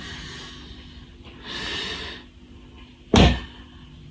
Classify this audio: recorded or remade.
recorded